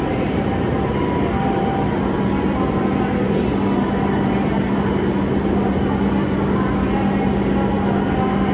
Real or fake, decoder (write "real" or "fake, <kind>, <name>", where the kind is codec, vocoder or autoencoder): real